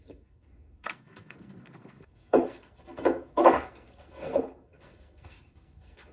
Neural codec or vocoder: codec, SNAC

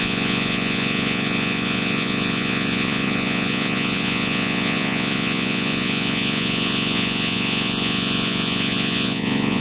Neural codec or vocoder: vocoder, Vocos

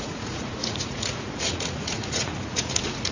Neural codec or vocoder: vocoder, Vocos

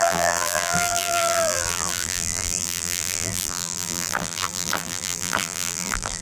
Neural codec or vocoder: vocoder, BigVGAN v2